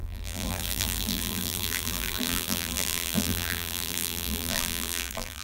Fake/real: fake